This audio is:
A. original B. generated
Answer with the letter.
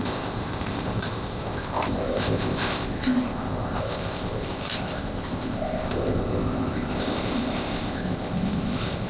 B